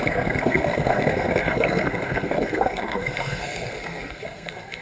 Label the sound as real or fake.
fake